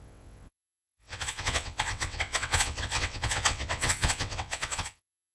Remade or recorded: remade